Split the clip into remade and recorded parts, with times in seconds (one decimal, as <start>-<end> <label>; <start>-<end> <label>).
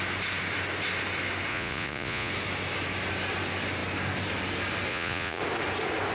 0.0-1.5 recorded; 1.5-2.3 remade; 2.3-4.9 recorded; 4.9-5.4 remade; 5.4-6.1 recorded